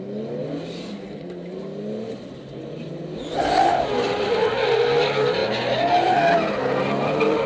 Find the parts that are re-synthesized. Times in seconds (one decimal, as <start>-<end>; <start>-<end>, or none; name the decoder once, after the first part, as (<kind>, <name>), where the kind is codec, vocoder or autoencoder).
none